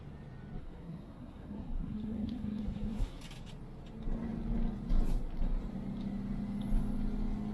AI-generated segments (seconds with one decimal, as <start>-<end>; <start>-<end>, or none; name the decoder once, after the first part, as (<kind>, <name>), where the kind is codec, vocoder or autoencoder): 0.6-3.2 (codec, SNAC)